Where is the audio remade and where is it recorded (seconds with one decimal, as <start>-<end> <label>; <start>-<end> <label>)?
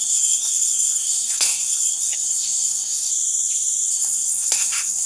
0.0-3.1 remade; 3.1-3.9 recorded; 3.9-5.1 remade